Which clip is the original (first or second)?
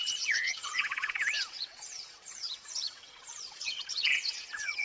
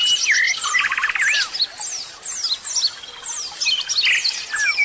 second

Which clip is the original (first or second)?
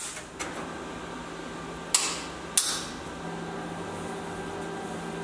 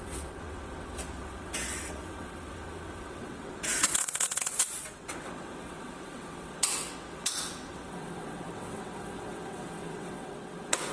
first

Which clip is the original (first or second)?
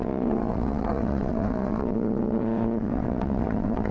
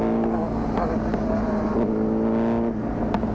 second